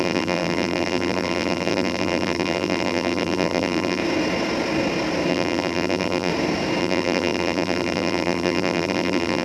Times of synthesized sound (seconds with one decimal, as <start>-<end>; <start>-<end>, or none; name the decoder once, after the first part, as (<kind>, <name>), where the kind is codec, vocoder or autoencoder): 0.0-4.0 (vocoder, BigVGAN v2); 5.3-6.3; 6.8-9.4